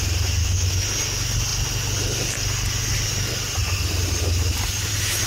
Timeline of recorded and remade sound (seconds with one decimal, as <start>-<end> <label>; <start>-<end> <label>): 0.0-0.4 recorded; 0.4-0.9 remade; 0.9-5.3 recorded